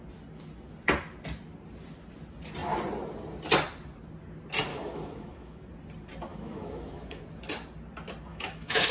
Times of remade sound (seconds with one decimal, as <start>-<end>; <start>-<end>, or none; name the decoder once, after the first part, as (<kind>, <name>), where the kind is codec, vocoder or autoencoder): 4.7-5.6 (autoencoder, DAC-VAE); 6.3-7.2; 8.3-8.9